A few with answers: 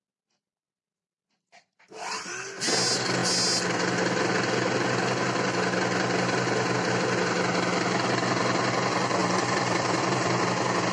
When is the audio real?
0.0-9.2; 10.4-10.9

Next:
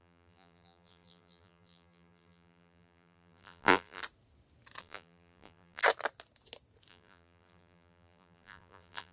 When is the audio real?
4.0-4.8; 5.8-6.9

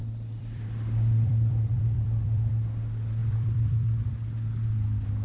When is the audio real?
2.5-3.2; 4.1-5.2

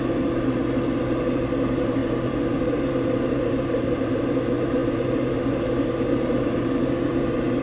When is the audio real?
0.6-1.1